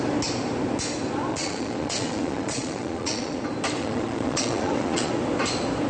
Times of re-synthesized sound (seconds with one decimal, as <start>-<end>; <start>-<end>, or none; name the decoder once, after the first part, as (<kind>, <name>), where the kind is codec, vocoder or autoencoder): 1.3-3.4 (vocoder, Vocos); 3.8-5.1